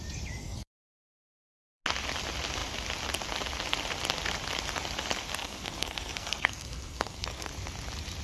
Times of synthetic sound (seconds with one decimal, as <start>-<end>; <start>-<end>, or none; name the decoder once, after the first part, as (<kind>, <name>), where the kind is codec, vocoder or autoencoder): 0.4-1.8 (codec, SNAC); 5.4-7.5